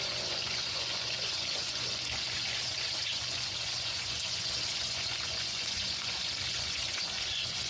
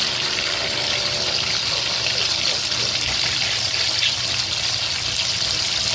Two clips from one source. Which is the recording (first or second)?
second